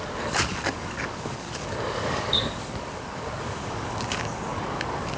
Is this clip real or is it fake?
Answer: fake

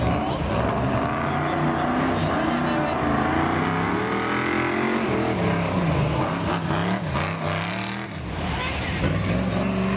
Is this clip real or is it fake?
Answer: real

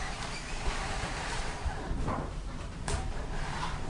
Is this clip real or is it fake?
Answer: fake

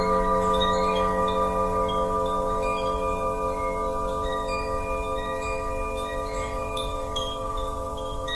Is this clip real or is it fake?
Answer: fake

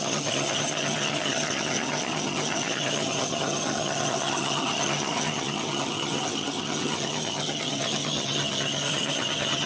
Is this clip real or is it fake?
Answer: fake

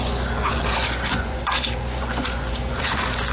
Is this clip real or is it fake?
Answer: fake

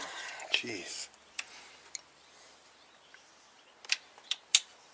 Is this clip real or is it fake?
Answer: real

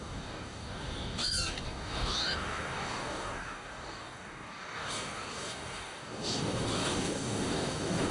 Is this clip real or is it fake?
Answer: fake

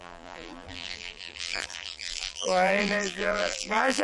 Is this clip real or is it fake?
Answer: fake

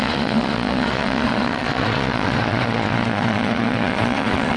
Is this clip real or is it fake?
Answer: fake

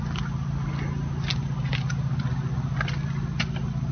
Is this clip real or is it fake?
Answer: real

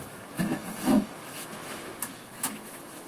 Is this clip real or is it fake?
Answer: fake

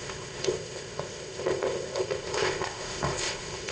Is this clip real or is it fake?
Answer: fake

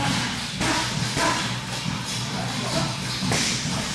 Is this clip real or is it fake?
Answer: real